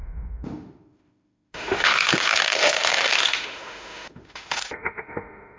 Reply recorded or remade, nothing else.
remade